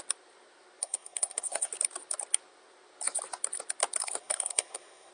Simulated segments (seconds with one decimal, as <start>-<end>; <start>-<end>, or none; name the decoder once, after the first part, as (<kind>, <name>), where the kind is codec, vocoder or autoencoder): 0.8-1.7 (codec, SNAC); 4.0-5.1